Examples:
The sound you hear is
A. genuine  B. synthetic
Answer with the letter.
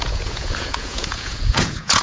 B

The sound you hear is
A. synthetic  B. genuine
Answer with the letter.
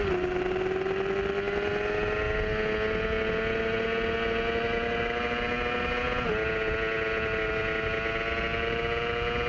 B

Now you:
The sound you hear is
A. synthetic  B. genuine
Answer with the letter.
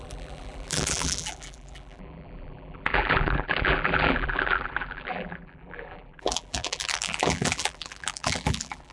A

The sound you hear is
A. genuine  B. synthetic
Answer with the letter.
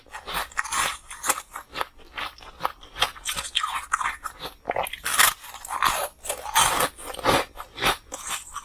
A